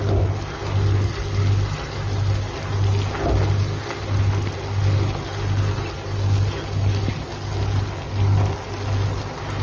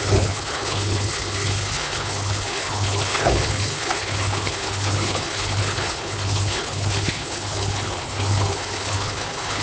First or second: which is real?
first